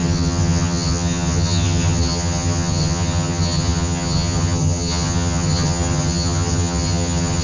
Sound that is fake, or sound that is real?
fake